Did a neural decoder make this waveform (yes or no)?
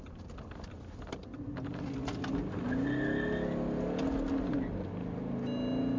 no